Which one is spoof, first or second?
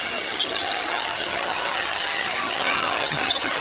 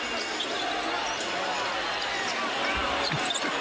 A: first